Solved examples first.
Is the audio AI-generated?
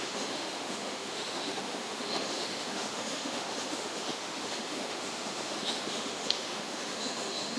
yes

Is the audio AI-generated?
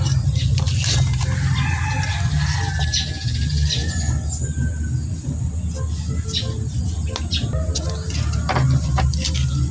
no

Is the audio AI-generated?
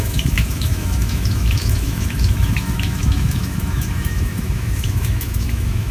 yes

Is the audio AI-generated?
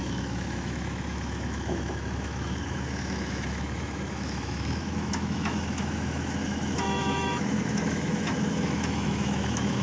yes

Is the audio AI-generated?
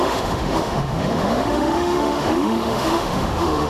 yes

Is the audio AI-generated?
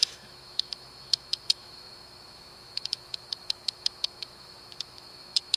yes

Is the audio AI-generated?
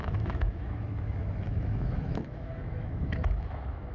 yes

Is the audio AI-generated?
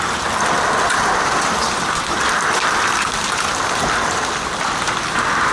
no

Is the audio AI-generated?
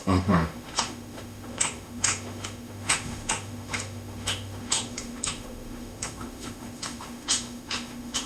yes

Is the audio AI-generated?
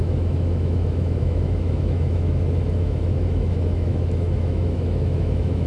yes